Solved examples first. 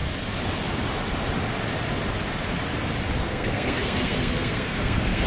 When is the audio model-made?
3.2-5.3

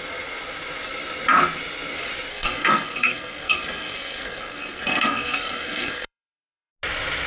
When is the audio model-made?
2.3-6.7

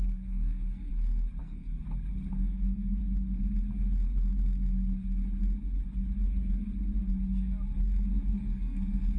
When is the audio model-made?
0.0-0.9; 1.4-1.8; 2.3-3.0; 8.1-9.2